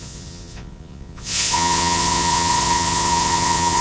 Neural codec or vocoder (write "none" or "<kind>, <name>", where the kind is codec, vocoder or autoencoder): vocoder, Vocos